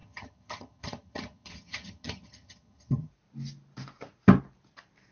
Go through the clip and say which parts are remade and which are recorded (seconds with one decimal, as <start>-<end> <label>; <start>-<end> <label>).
0.0-3.1 remade; 3.1-5.1 recorded